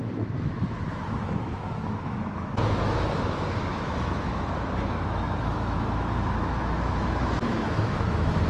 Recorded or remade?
remade